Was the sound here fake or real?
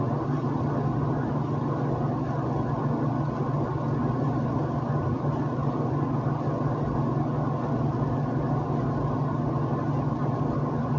real